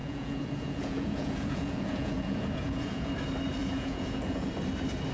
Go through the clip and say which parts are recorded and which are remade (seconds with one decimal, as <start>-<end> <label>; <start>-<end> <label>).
0.0-3.1 remade; 3.1-3.6 recorded; 3.6-4.5 remade; 4.5-5.1 recorded